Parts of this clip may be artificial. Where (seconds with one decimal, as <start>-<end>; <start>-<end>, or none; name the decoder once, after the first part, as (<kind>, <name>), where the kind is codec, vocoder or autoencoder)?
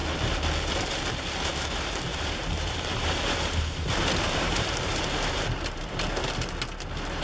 2.1-6.1 (vocoder, BigVGAN v2)